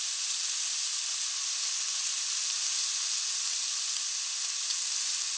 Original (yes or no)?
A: yes